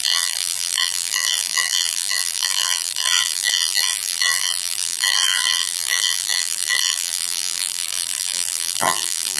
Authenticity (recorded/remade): remade